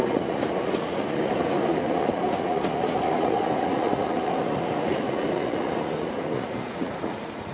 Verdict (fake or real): fake